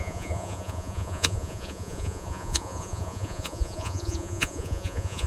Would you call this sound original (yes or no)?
no